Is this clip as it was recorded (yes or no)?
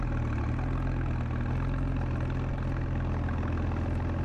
yes